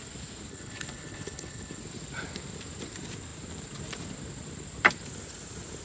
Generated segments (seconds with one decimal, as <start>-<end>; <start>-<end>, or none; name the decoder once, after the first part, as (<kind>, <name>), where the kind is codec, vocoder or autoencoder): 0.5-1.8 (codec, HILCodec)